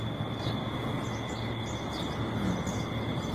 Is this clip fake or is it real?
real